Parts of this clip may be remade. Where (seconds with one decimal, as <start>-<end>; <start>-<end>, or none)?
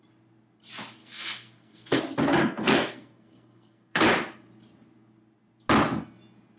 1.0-2.0; 2.4-4.0